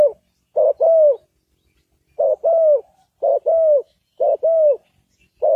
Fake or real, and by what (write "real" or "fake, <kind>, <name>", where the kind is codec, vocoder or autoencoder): real